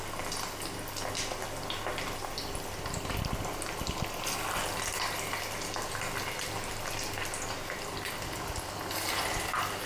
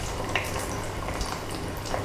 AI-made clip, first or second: second